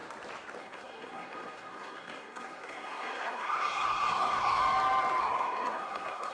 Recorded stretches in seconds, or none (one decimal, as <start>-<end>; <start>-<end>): 0.0-0.6; 4.6-5.2

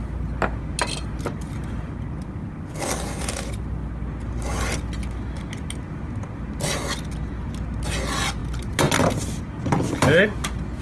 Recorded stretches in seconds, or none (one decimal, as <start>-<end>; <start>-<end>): 0.0-10.8

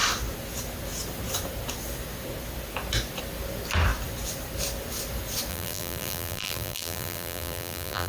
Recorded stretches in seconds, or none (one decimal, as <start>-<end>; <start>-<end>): 0.0-5.5

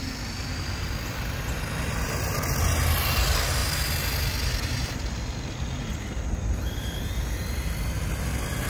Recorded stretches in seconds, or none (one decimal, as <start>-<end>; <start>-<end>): 0.0-8.7

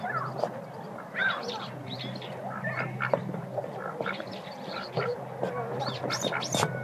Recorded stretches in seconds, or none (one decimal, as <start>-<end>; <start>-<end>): 0.0-6.8